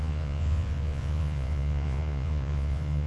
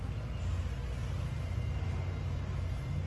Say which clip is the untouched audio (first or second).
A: second